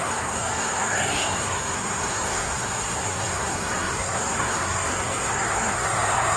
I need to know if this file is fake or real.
fake